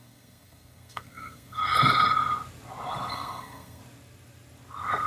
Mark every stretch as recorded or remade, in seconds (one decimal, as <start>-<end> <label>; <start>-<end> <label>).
0.0-1.6 remade; 1.6-3.1 recorded; 3.1-3.8 remade; 3.8-5.1 recorded